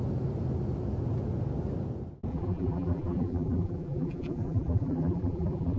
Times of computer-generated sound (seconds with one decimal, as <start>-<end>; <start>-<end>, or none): 2.3-5.8